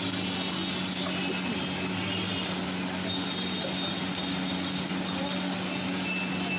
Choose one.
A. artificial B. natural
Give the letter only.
B